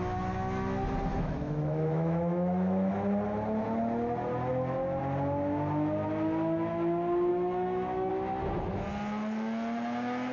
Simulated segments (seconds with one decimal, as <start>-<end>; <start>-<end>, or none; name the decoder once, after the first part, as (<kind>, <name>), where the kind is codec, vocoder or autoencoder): 1.1-2.9 (autoencoder, DAC-VAE); 7.3-8.1